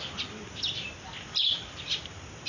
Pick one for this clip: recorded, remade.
recorded